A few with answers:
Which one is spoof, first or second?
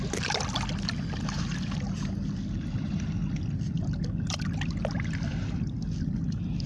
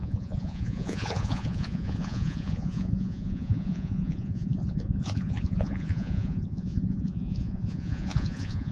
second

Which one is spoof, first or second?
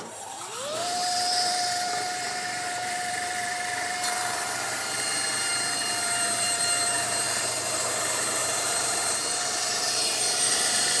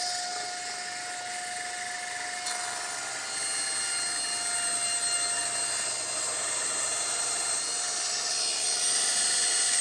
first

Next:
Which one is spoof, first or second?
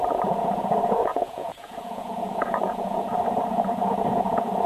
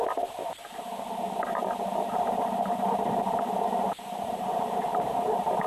first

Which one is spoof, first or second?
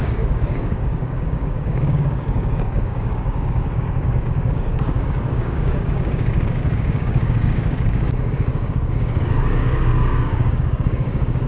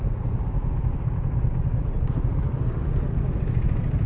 first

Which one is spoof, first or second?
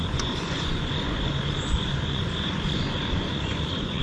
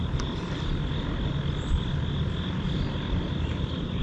first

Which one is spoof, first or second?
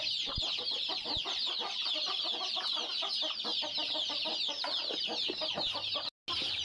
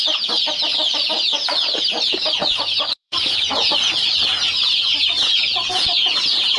second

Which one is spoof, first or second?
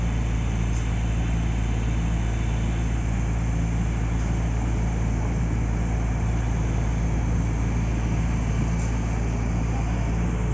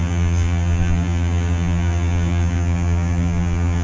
second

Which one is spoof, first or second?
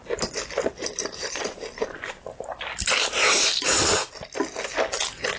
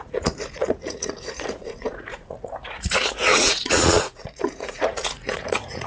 second